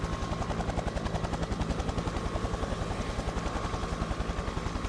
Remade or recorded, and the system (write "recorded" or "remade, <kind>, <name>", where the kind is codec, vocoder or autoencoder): recorded